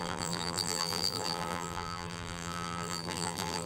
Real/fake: fake